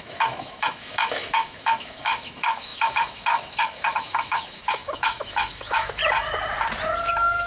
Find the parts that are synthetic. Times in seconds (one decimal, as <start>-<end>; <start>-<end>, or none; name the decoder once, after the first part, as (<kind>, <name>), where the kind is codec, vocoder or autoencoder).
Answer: 0.0-6.0 (autoencoder, DAC-VAE); 7.1-7.5